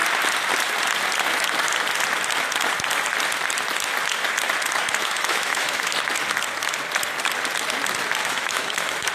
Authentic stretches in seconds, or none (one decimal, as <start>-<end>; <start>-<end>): 0.0-5.0; 5.9-8.2

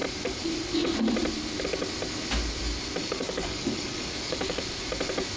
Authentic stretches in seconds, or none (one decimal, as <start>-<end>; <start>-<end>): 0.0-3.0; 4.6-5.4

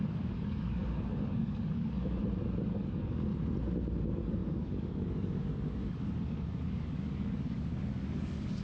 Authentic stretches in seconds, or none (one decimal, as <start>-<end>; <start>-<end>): 2.2-2.7; 3.3-4.0

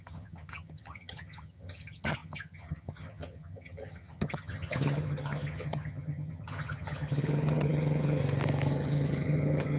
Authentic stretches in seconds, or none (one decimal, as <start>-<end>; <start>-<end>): 8.2-8.7

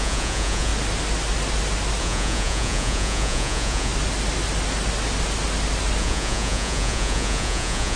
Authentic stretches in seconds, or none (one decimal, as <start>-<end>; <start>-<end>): 0.7-2.0; 3.9-6.0